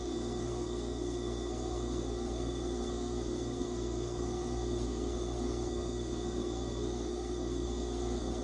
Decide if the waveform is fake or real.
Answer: fake